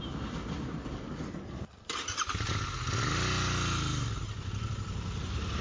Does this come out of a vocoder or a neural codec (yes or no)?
no